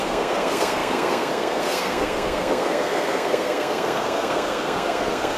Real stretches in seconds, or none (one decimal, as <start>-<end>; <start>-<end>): none